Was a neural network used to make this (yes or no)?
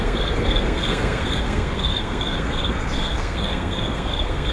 yes